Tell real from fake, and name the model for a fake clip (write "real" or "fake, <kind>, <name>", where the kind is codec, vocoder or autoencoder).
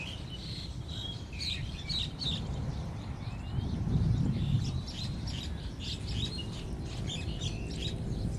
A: real